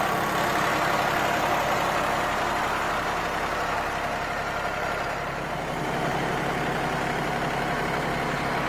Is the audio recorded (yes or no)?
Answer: yes